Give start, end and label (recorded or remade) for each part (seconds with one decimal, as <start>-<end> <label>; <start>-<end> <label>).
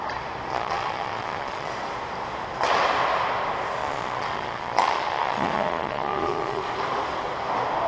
0.0-0.5 recorded; 0.5-1.7 remade; 1.7-3.8 recorded; 3.8-6.6 remade; 6.6-7.9 recorded